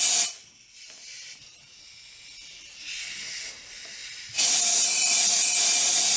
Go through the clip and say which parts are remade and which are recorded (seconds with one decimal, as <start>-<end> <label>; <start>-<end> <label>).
0.0-6.2 recorded